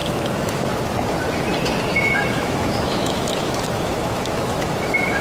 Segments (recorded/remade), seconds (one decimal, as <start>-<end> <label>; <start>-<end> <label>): 0.0-0.7 remade; 0.7-1.9 recorded; 1.9-5.2 remade